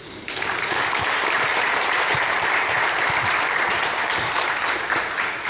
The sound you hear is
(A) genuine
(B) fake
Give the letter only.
B